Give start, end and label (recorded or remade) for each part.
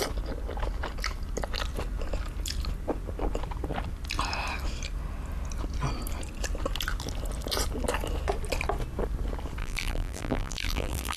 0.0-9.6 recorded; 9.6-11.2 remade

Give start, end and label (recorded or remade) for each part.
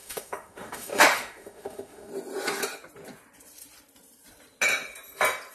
0.0-2.1 remade; 2.1-5.5 recorded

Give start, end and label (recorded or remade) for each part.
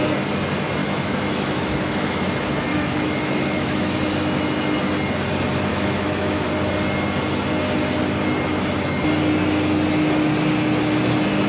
0.0-0.8 recorded; 0.8-2.3 remade; 2.3-2.7 recorded; 2.7-4.0 remade; 4.0-5.7 recorded; 5.7-6.5 remade; 6.5-11.5 recorded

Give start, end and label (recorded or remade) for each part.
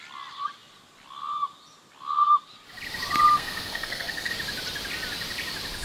0.0-3.3 recorded; 3.3-4.3 remade; 4.3-5.8 recorded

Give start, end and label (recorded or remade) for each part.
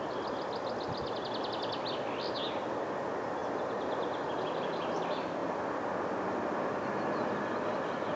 0.0-8.2 recorded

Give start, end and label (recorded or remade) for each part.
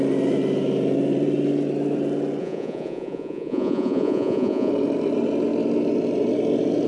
0.0-2.4 recorded; 2.4-4.7 remade; 4.7-6.9 recorded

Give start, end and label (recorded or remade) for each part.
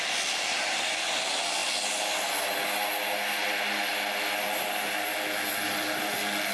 0.0-6.5 recorded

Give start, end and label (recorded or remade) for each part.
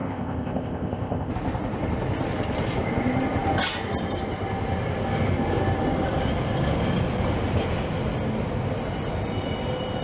0.0-1.3 remade; 1.3-10.0 recorded